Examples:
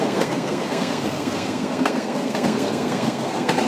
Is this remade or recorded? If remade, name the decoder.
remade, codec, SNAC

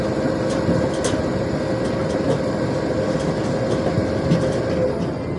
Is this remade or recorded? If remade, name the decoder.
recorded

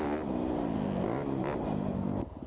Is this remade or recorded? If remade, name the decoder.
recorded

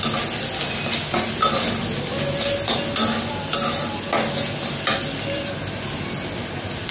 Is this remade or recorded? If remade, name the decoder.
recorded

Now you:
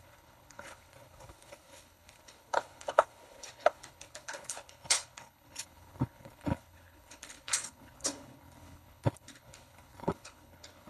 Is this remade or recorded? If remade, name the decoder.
remade, codec, HILCodec